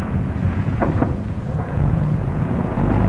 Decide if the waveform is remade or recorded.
remade